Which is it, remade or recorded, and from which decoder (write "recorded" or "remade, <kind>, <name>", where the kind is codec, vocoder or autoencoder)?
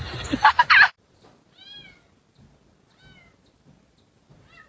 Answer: recorded